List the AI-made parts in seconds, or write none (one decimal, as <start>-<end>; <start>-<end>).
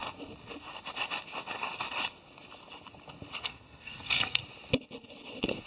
3.4-4.4